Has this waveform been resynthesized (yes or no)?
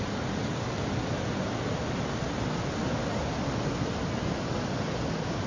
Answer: no